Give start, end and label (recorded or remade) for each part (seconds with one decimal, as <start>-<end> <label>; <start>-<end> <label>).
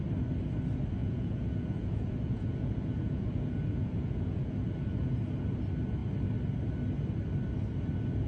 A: 0.0-1.0 recorded; 1.0-5.1 remade; 5.1-8.3 recorded